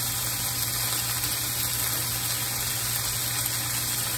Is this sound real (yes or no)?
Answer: yes